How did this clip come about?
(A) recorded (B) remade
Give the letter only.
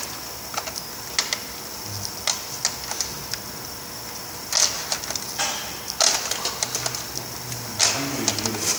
A